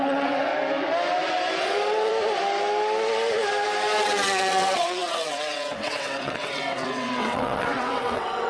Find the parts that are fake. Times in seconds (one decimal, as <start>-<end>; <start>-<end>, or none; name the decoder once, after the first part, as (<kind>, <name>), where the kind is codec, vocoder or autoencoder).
0.0-0.5 (vocoder, WaveNeXt); 1.6-2.1; 4.0-8.5